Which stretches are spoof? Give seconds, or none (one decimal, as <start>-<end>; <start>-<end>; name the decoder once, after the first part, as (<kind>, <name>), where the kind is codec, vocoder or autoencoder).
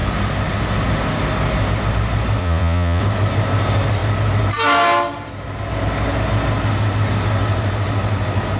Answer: 2.4-3.0 (vocoder, Vocos)